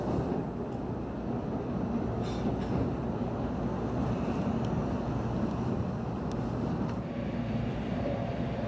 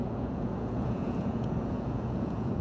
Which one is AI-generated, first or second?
second